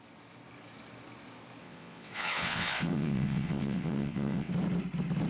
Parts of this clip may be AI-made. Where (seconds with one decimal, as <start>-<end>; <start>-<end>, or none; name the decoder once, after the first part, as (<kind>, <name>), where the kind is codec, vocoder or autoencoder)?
1.6-4.5 (vocoder, WaveNeXt)